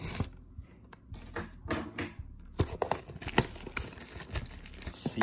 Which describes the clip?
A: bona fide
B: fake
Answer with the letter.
A